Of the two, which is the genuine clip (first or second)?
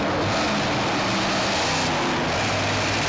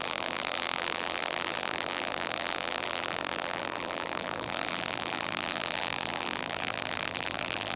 first